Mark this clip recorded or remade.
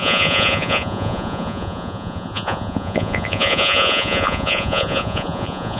remade